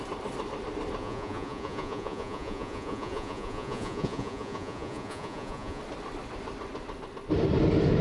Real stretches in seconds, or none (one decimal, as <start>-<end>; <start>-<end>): 0.0-1.0; 5.8-8.0